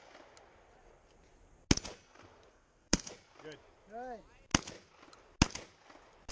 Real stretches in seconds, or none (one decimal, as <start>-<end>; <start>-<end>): 0.0-2.5; 3.1-6.3